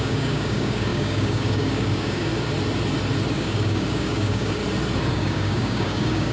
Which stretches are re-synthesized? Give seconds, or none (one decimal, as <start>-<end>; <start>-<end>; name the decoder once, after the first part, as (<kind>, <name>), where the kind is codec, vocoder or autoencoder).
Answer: 0.0-2.3 (codec, DAC); 3.3-4.6; 5.1-6.3